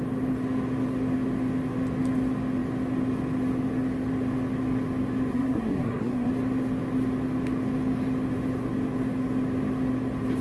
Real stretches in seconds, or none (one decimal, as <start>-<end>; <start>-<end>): 0.0-5.3; 6.3-10.4